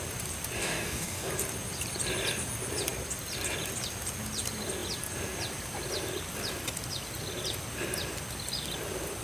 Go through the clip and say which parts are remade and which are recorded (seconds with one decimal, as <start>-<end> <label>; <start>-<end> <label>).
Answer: 0.0-0.6 recorded; 0.6-1.3 remade; 1.3-9.2 recorded